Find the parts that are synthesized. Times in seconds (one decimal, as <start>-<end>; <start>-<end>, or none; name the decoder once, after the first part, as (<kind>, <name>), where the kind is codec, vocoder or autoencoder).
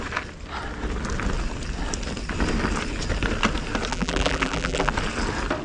3.9-4.9 (vocoder, BigVGAN v2)